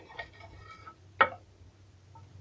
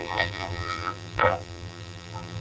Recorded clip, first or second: first